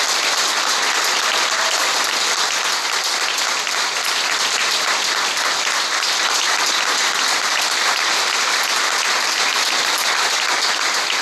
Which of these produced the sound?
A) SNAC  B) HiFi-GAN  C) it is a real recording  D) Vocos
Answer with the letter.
C